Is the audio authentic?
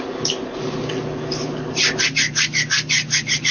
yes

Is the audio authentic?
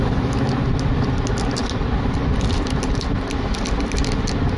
yes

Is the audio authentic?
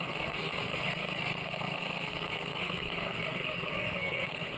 no